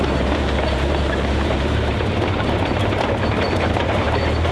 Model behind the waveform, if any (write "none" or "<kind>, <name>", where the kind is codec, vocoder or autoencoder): vocoder, BigVGAN v2